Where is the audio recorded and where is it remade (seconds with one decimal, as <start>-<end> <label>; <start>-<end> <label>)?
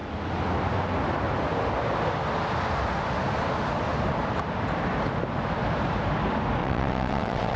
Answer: 0.0-6.6 recorded; 6.6-7.6 remade